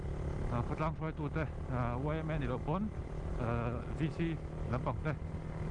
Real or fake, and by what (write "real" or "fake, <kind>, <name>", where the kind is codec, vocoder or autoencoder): real